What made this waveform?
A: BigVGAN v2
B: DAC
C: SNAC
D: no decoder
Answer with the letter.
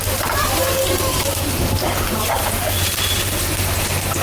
A